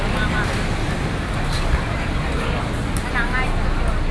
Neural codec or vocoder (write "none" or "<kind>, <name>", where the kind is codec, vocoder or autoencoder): none